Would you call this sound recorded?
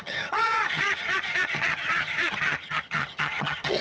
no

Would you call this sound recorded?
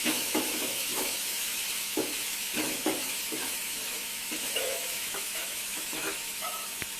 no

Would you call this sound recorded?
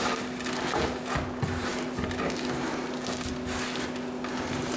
yes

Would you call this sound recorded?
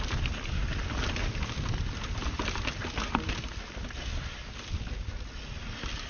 yes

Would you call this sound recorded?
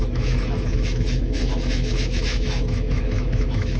no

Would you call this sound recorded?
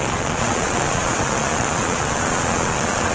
no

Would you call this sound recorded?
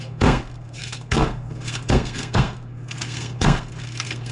no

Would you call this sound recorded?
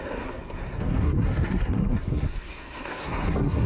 no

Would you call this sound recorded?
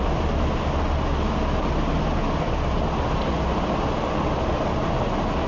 yes